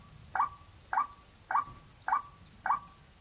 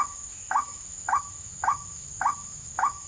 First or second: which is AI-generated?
second